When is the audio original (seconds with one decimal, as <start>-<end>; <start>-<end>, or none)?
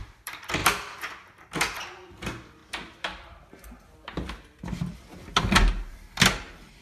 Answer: 0.6-1.8; 2.6-5.9